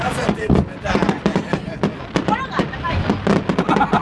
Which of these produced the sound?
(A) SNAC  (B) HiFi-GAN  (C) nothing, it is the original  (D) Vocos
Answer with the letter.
C